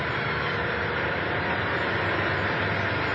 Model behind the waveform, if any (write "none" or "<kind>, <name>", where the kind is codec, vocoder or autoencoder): none